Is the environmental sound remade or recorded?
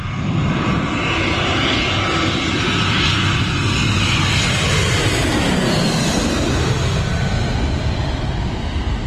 recorded